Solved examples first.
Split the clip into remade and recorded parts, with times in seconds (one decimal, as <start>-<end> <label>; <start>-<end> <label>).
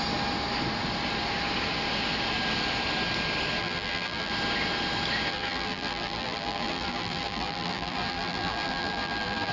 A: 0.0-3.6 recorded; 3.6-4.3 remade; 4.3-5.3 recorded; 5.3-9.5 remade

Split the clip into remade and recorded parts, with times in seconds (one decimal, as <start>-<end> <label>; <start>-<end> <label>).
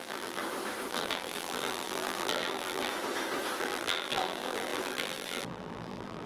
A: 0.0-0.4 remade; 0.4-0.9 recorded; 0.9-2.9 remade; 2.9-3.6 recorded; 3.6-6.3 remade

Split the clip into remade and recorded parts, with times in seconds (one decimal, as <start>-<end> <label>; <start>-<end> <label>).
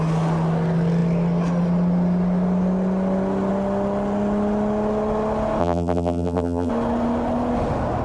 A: 0.0-5.6 recorded; 5.6-6.7 remade; 6.7-8.0 recorded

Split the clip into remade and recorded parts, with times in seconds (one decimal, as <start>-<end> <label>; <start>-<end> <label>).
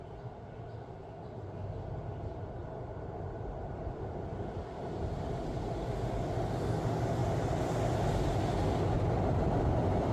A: 0.0-2.6 recorded; 2.6-5.4 remade; 5.4-7.2 recorded; 7.2-8.3 remade; 8.3-10.1 recorded